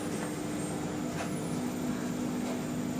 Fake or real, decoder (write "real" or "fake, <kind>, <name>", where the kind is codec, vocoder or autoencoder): real